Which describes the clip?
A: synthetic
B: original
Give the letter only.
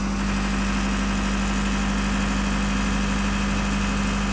B